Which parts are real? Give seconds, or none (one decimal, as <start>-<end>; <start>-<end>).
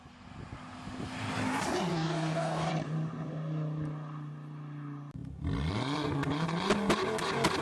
0.0-1.9; 2.7-7.6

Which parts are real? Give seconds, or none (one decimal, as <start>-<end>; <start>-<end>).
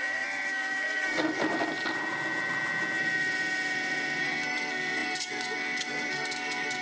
1.4-4.2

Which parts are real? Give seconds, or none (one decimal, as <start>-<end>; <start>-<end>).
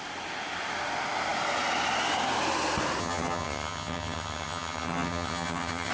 0.0-3.0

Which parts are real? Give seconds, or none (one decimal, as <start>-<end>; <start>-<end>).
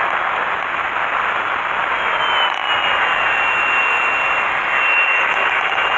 0.0-6.0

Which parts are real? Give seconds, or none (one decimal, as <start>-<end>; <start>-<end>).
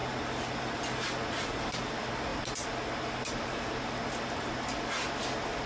0.0-5.7